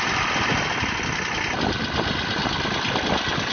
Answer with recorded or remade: recorded